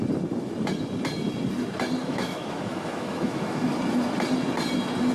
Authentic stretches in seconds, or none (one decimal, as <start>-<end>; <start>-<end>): 0.0-2.0; 3.6-5.1

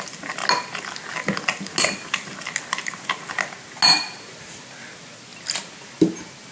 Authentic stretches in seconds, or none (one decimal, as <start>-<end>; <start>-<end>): 0.0-6.5